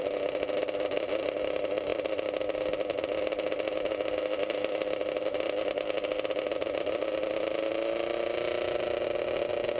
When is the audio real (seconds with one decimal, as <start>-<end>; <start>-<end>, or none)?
0.0-9.8